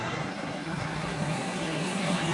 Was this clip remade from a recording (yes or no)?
yes